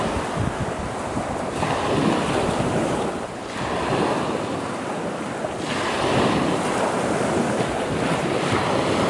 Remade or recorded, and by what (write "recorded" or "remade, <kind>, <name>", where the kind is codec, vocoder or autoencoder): recorded